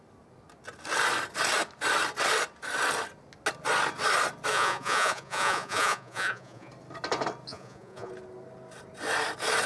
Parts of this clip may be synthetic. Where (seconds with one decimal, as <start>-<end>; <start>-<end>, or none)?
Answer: 4.5-6.7; 7.5-8.1